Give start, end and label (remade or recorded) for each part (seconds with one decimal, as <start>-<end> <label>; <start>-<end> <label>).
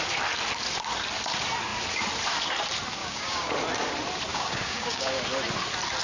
0.0-3.0 recorded; 3.0-3.5 remade; 3.5-4.3 recorded; 4.3-5.2 remade; 5.2-6.0 recorded